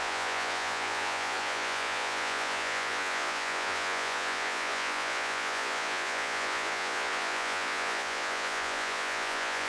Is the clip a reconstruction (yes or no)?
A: yes